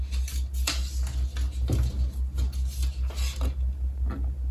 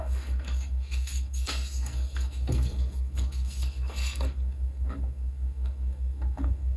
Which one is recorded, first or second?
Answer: first